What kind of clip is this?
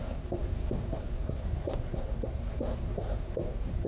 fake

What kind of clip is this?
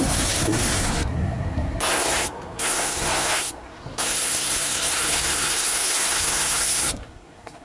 fake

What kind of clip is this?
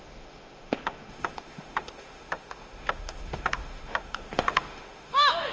fake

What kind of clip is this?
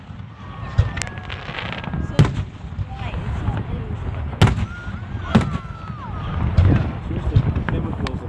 real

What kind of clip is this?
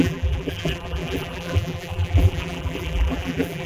fake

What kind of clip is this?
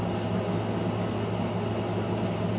real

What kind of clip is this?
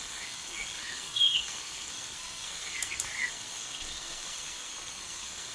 fake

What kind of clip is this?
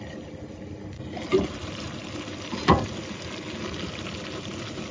real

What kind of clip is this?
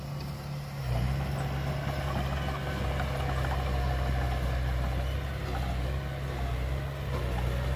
real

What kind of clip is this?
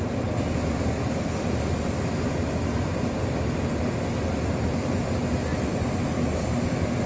real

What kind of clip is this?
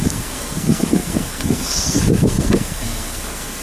fake